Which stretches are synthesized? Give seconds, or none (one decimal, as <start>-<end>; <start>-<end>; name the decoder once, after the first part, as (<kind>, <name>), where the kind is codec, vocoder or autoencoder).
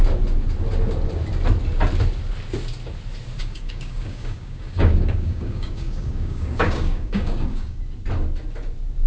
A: 3.4-7.8 (codec, DAC)